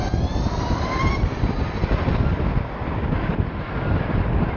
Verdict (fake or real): real